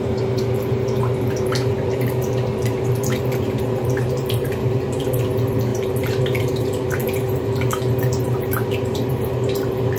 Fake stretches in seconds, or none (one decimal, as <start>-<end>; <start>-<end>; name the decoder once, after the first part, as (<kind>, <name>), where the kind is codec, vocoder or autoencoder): 0.0-10.0 (vocoder, BigVGAN v2)